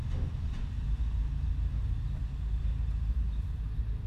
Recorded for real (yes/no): yes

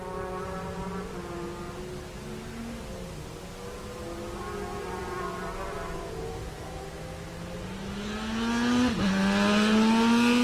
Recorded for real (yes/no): yes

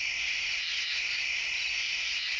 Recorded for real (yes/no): yes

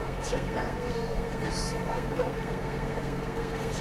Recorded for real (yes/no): no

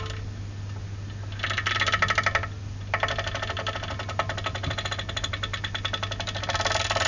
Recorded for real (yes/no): yes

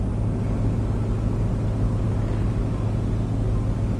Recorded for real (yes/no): yes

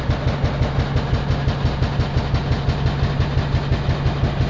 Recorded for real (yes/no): yes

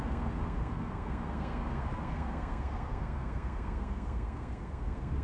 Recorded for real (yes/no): no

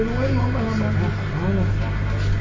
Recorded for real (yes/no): yes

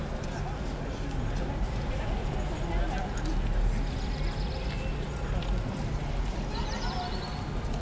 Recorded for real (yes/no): yes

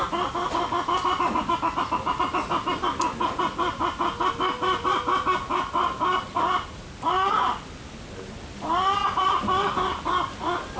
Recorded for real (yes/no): yes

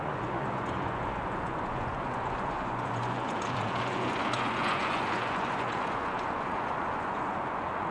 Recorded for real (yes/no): no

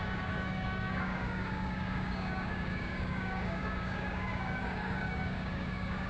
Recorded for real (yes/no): no